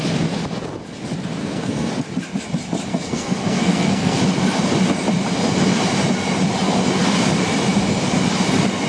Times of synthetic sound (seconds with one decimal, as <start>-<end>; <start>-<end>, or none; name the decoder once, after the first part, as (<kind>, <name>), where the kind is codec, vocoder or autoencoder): 1.4-1.9 (codec, SNAC); 2.9-4.2